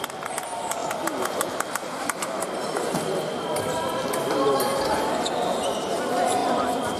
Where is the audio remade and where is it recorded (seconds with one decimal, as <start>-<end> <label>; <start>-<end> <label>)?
0.0-7.0 recorded